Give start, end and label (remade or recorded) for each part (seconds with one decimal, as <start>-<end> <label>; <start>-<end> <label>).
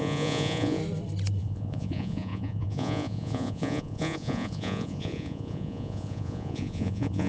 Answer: 0.0-0.8 remade; 0.8-1.4 recorded; 1.4-7.3 remade